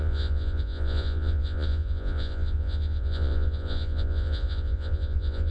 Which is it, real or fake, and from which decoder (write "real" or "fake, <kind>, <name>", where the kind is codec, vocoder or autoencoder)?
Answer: fake, vocoder, Vocos